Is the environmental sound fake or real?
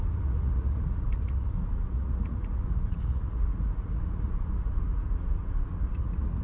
fake